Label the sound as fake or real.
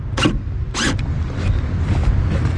real